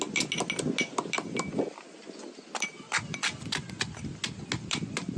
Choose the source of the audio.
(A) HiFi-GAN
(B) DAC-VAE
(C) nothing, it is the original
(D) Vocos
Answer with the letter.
C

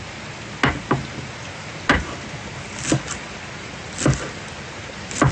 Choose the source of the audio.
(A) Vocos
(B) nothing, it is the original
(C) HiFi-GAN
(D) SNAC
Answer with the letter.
B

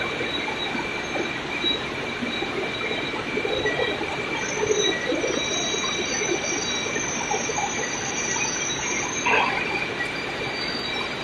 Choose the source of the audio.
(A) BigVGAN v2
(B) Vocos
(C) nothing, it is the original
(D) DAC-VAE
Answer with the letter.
C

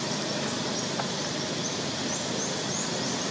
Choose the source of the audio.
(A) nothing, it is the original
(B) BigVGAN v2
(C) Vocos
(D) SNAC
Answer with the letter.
A